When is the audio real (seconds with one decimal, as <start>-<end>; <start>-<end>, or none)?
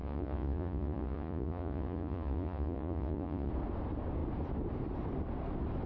3.5-5.9